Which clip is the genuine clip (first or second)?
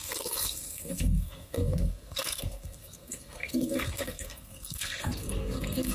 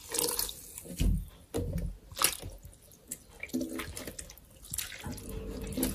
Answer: second